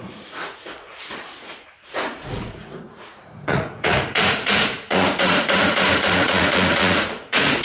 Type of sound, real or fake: fake